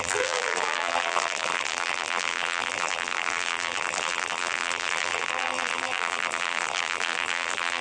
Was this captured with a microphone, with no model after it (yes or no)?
no